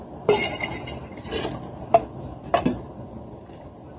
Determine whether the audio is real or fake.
real